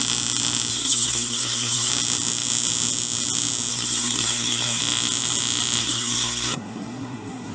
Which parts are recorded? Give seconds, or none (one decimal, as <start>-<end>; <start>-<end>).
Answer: 0.0-0.7; 1.9-3.7; 4.8-5.8